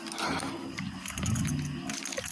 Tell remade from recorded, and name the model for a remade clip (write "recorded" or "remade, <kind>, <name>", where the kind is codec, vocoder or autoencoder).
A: recorded